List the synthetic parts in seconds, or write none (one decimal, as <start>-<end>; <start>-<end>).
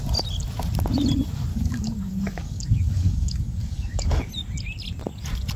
1.5-4.3